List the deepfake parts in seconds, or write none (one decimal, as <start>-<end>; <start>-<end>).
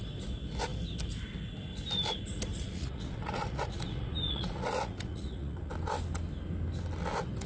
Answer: 2.5-5.7